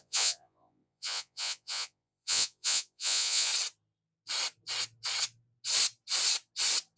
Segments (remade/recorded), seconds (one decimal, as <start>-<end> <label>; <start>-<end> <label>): 0.0-3.5 remade; 3.5-7.0 recorded